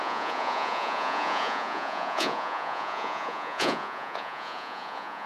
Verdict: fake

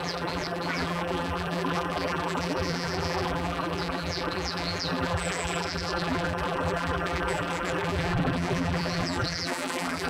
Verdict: fake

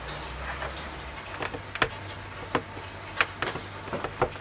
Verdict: real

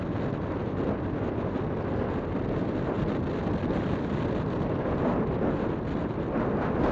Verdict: real